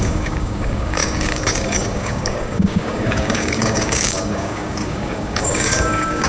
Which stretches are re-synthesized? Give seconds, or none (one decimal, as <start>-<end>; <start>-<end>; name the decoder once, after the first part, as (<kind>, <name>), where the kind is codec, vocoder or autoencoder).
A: 0.0-6.3 (codec, DAC)